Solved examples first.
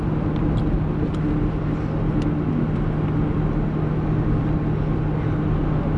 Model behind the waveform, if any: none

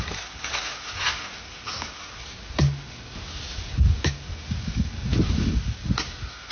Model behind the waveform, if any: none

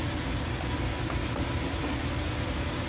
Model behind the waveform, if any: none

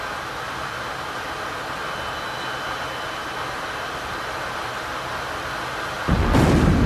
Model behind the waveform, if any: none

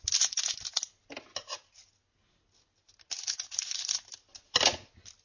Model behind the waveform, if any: none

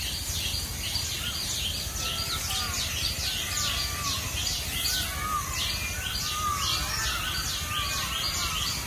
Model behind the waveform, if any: none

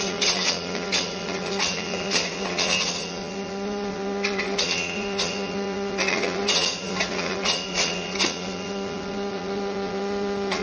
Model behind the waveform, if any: vocoder, Vocos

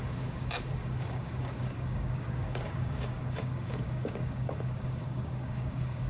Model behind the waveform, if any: codec, DAC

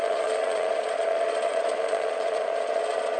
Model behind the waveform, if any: vocoder, Vocos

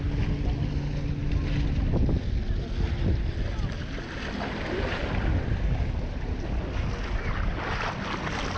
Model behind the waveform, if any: none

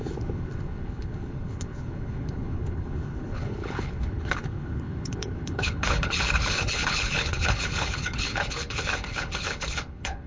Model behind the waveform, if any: codec, HILCodec